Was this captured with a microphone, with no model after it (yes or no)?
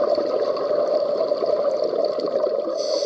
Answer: yes